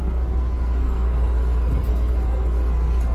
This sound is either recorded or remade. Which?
remade